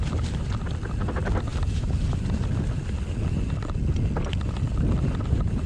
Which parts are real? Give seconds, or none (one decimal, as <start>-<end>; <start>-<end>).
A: 0.0-5.7